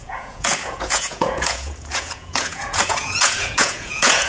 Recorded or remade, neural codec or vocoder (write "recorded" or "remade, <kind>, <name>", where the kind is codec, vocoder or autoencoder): remade, vocoder, Vocos